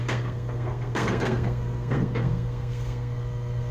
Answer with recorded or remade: remade